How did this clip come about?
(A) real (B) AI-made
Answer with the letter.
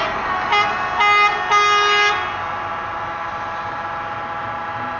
A